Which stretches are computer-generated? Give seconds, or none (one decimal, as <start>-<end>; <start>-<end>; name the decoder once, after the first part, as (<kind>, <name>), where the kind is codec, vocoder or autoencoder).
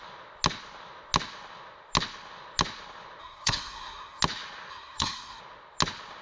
3.2-4.2 (codec, SNAC); 4.7-5.4